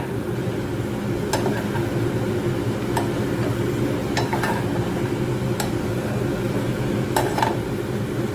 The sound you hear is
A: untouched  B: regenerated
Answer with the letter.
A